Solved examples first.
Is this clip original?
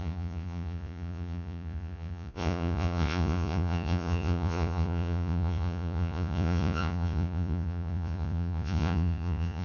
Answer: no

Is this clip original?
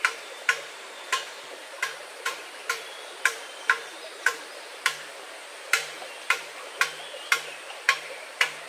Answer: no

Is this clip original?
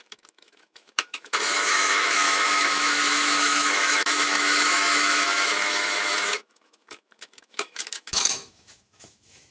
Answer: no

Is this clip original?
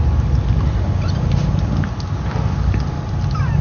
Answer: yes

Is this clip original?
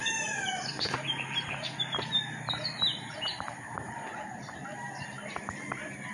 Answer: no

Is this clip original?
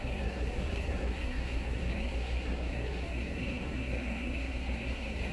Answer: no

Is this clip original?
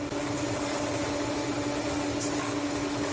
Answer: yes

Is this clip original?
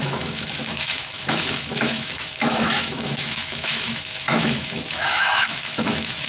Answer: no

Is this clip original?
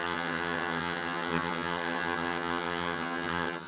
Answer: no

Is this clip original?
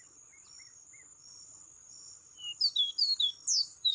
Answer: yes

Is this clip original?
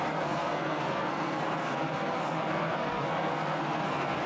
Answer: no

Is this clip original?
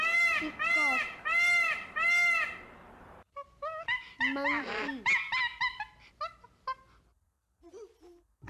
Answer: yes